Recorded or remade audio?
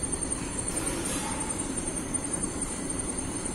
remade